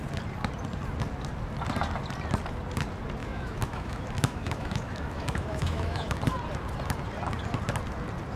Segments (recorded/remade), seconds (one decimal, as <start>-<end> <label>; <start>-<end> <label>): 0.0-3.2 recorded; 3.2-6.2 remade; 6.2-8.4 recorded